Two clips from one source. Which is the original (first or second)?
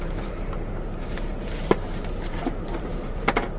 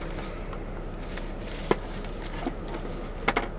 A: second